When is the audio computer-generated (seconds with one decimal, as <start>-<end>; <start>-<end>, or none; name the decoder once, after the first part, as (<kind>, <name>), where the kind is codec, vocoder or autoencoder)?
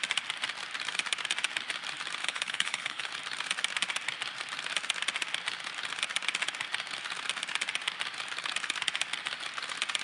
2.2-3.1 (codec, HILCodec)